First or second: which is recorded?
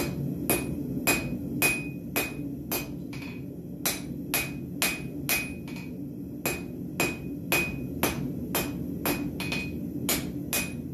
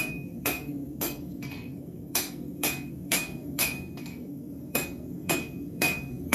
first